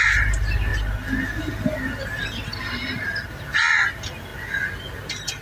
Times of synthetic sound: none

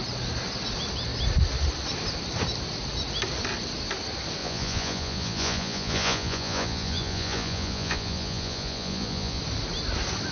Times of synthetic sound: 4.4-9.4 (vocoder, Vocos)